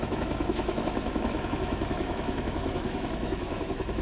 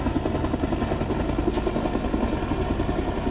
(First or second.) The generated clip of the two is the first